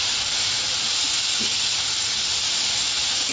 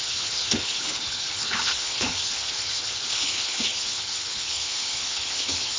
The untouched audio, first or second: first